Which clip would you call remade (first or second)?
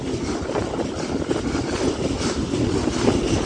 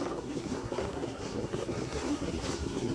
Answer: second